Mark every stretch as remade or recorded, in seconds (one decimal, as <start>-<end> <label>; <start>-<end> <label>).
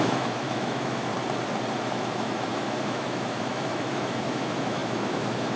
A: 0.0-1.1 remade; 1.1-1.9 recorded; 1.9-5.6 remade